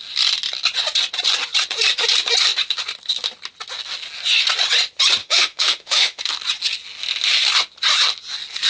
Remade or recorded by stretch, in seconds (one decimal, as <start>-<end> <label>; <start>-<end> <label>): 0.0-5.2 recorded; 5.2-6.3 remade; 6.3-8.7 recorded